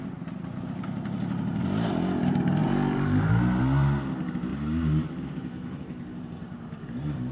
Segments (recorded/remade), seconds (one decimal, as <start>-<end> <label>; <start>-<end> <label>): 0.0-2.6 recorded; 2.6-3.6 remade; 3.6-4.5 recorded; 4.5-7.3 remade